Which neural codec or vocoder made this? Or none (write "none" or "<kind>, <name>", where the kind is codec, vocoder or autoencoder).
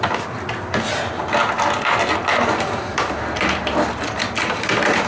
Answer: none